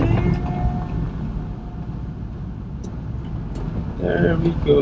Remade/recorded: recorded